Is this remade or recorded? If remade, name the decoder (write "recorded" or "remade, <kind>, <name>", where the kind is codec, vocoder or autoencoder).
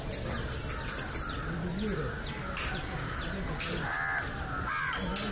recorded